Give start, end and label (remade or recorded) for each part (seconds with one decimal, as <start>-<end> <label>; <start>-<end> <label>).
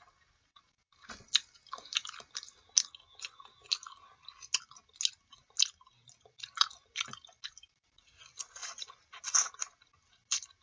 0.0-10.6 recorded